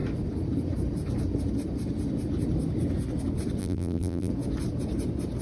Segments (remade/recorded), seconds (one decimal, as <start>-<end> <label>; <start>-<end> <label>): 0.0-3.6 recorded; 3.6-4.3 remade; 4.3-5.4 recorded